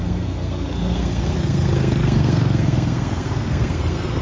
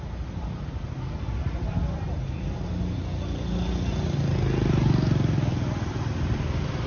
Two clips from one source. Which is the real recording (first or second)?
second